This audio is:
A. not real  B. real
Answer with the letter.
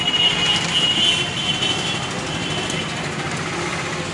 B